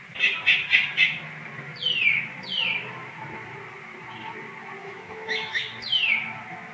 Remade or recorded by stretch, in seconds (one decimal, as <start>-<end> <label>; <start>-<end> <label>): 0.0-4.8 recorded; 4.8-5.6 remade; 5.6-6.7 recorded

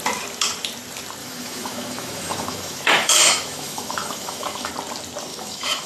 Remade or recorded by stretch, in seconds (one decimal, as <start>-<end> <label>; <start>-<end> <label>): 0.0-1.2 recorded; 1.2-4.7 remade; 4.7-5.3 recorded; 5.3-5.9 remade

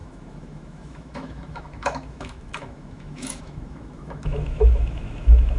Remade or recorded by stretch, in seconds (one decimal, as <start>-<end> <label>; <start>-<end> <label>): 0.0-5.6 remade

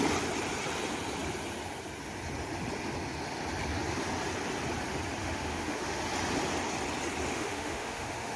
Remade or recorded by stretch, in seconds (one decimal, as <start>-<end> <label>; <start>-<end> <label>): 0.0-5.2 recorded; 5.2-6.0 remade; 6.0-7.3 recorded; 7.3-8.4 remade

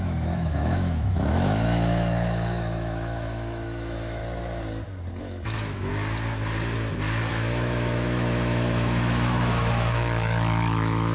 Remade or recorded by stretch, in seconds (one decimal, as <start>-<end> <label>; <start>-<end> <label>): 0.0-4.2 remade; 4.2-5.2 recorded; 5.2-5.9 remade; 5.9-7.3 recorded; 7.3-11.1 remade